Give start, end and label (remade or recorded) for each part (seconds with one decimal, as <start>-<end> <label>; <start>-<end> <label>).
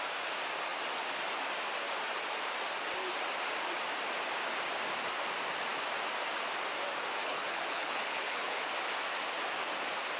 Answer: 0.0-7.2 recorded; 7.2-8.6 remade; 8.6-10.2 recorded